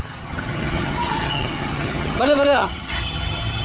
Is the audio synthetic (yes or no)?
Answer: yes